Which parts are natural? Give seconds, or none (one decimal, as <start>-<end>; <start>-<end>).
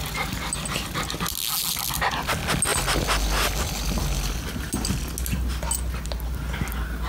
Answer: 0.0-7.1